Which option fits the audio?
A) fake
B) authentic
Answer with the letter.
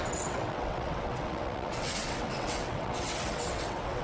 A